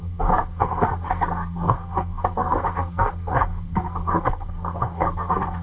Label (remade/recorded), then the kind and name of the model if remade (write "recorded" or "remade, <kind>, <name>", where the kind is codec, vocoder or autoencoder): remade, codec, SNAC